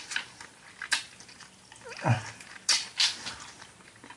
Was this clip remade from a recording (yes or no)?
no